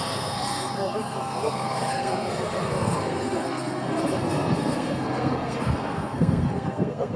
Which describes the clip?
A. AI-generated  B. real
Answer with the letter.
A